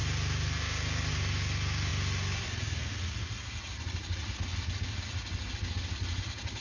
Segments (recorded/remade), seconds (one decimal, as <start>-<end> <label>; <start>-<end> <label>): 0.0-6.6 recorded